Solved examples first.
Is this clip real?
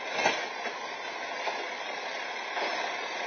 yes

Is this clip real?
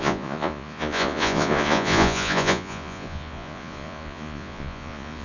no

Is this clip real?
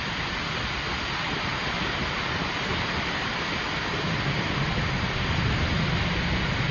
yes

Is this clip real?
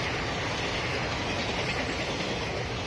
yes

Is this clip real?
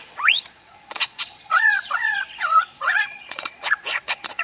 no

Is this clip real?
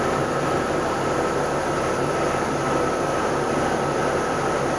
yes